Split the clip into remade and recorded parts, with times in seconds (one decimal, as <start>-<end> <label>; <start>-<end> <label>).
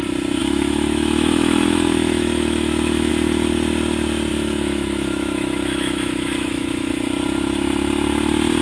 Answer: 0.0-0.4 recorded; 0.4-3.1 remade; 3.1-4.3 recorded; 4.3-6.9 remade; 6.9-8.6 recorded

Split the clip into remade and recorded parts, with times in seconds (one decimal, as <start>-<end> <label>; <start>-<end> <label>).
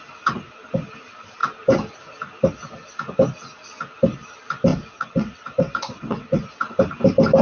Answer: 0.0-4.7 recorded; 4.7-6.4 remade; 6.4-7.4 recorded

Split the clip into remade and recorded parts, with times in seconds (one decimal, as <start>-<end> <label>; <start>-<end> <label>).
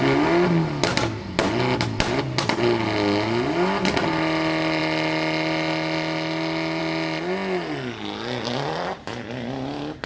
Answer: 0.0-10.1 recorded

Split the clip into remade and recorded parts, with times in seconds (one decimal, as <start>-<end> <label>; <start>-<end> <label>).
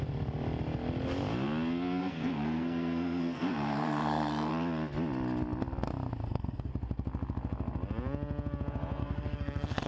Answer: 0.0-2.0 recorded; 2.0-4.5 remade; 4.5-6.2 recorded; 6.2-6.7 remade; 6.7-9.0 recorded; 9.0-9.9 remade